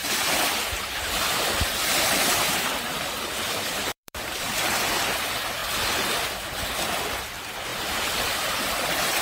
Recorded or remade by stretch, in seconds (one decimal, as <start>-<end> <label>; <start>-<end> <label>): 0.0-5.6 remade; 5.6-6.8 recorded; 6.8-7.7 remade; 7.7-8.6 recorded; 8.6-9.2 remade